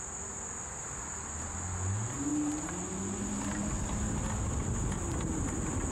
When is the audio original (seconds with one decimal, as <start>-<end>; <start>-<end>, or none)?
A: 0.0-5.9